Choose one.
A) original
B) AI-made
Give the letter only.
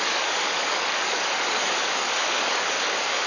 B